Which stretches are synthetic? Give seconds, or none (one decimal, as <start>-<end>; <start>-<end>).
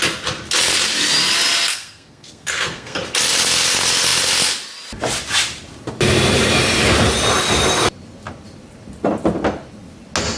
1.7-3.0